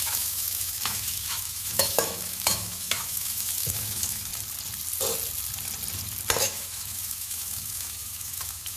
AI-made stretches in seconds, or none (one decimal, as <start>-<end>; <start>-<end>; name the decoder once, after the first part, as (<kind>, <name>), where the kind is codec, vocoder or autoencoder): 0.0-4.3 (autoencoder, DAC-VAE); 6.4-8.8